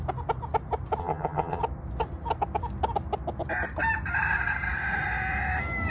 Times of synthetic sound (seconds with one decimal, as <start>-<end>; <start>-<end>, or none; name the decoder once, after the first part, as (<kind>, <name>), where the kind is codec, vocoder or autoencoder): 1.0-1.6 (vocoder, HiFi-GAN)